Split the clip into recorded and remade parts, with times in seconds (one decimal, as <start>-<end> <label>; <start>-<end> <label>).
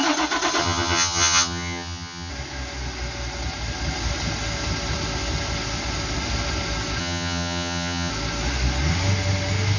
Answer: 0.0-0.6 recorded; 0.6-2.3 remade; 2.3-7.0 recorded; 7.0-8.1 remade; 8.1-9.8 recorded